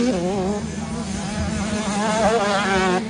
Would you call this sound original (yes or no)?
yes